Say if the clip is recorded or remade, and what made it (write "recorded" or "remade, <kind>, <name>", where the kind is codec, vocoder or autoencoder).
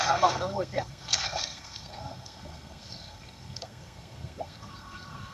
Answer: remade, codec, SNAC